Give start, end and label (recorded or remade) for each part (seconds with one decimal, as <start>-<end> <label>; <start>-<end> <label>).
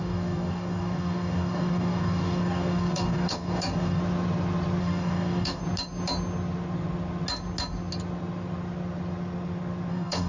0.0-4.0 remade; 4.0-4.8 recorded; 4.8-5.6 remade; 5.6-9.9 recorded; 9.9-10.3 remade